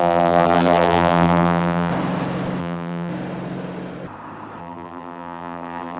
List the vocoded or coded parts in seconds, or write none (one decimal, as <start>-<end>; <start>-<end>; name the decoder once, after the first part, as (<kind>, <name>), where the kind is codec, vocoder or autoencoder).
0.0-1.9 (vocoder, BigVGAN v2); 2.6-3.1; 4.6-6.0